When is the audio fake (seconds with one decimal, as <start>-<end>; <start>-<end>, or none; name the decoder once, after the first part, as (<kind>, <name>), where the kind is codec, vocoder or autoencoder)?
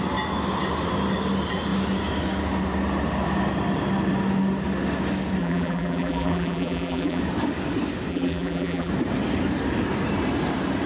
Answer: 5.4-7.2 (vocoder, BigVGAN v2); 8.1-8.9